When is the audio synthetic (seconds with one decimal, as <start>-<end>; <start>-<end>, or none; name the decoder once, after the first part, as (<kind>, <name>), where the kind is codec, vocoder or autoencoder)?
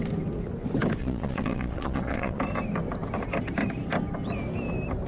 1.0-2.4 (vocoder, Vocos)